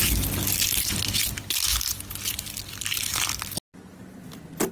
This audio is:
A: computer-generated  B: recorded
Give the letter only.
B